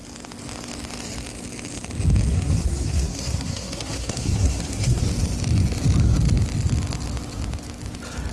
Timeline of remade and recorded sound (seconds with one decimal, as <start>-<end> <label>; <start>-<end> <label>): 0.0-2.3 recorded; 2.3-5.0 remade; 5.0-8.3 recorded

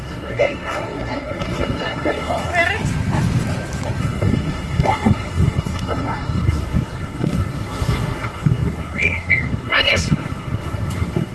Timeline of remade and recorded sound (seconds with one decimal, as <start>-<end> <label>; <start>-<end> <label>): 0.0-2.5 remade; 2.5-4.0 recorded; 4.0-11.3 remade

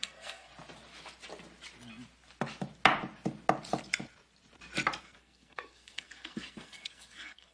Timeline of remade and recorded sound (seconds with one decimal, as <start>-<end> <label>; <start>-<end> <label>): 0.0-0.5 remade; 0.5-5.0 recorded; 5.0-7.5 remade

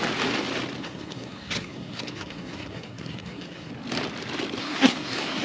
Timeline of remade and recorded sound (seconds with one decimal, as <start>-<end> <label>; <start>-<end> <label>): 0.0-0.8 recorded; 0.8-3.7 remade; 3.7-4.6 recorded; 4.6-5.4 remade

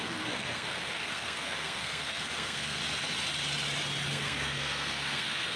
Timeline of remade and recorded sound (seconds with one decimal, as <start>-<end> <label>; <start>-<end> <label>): 0.0-2.8 remade; 2.8-4.1 recorded; 4.1-5.6 remade

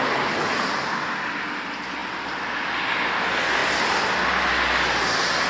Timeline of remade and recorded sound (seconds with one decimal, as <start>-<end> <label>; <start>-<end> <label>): 0.0-5.5 recorded

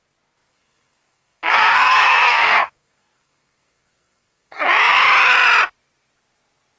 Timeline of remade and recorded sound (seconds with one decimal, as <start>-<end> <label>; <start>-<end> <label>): 0.0-0.5 recorded; 0.5-4.6 remade; 4.6-6.8 recorded